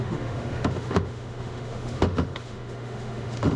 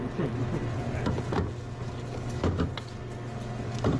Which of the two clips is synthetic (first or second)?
first